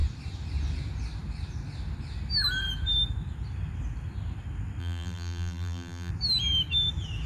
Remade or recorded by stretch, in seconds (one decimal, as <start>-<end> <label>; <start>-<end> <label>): 0.0-4.8 recorded; 4.8-6.1 remade; 6.1-7.3 recorded